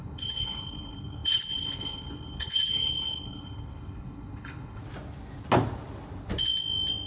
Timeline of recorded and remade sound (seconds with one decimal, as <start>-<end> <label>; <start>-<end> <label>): 0.0-4.8 remade; 4.8-7.1 recorded